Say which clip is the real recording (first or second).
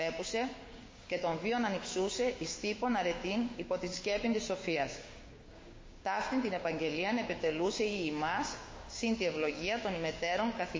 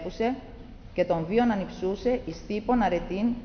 second